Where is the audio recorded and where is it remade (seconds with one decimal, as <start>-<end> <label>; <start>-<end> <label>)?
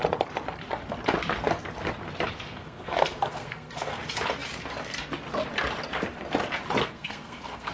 0.0-2.3 recorded; 2.3-4.0 remade; 4.0-6.8 recorded; 6.8-7.7 remade